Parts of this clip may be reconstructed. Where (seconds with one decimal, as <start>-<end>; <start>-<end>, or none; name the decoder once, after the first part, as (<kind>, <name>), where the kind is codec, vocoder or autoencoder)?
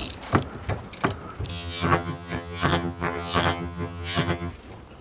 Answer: 1.5-4.5 (vocoder, HiFi-GAN)